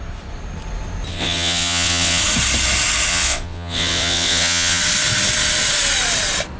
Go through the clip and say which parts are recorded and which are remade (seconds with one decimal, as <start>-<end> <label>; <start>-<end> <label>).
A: 0.0-1.1 recorded; 1.1-2.2 remade; 2.2-3.1 recorded; 3.1-4.8 remade; 4.8-6.6 recorded